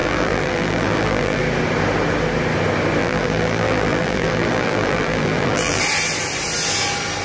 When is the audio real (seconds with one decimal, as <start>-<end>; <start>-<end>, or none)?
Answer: 1.4-3.0; 5.8-7.2